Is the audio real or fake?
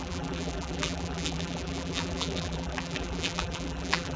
fake